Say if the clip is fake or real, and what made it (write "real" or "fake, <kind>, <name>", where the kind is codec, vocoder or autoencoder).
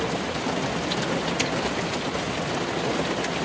real